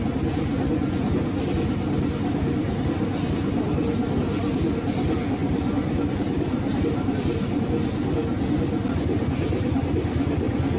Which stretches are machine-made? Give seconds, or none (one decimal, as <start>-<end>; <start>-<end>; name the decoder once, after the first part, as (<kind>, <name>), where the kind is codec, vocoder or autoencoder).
0.5-1.2 (vocoder, Vocos)